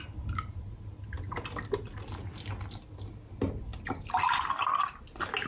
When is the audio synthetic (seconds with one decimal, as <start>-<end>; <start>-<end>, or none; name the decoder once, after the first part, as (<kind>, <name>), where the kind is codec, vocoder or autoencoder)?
none